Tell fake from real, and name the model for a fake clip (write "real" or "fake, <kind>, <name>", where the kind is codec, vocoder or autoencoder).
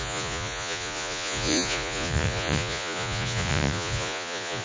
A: fake, vocoder, Vocos